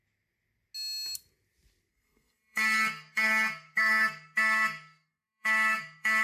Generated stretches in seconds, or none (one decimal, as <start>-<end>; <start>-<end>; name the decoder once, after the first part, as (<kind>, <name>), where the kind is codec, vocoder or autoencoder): 1.9-6.2 (codec, SNAC)